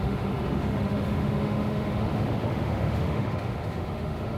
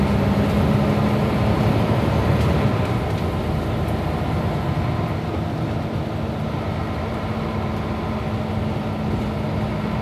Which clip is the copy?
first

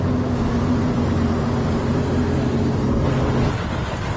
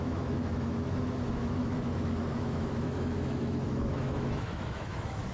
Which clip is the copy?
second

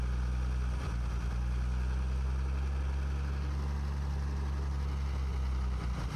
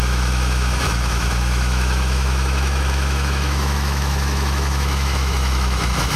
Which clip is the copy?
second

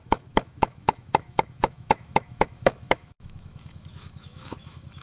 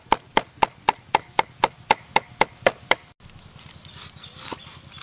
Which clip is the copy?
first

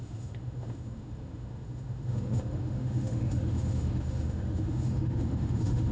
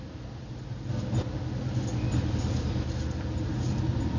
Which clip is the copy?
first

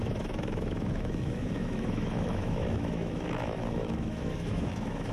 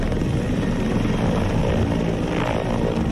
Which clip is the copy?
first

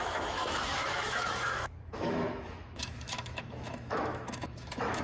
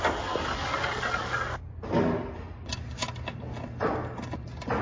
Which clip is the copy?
first